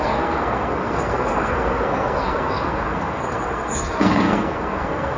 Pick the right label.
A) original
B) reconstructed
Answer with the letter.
B